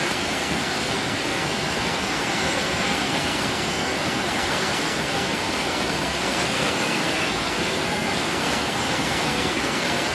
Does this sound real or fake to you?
fake